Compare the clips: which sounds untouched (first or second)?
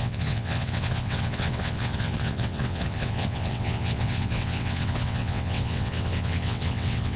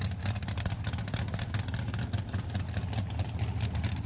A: second